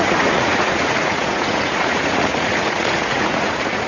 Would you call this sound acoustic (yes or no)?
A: no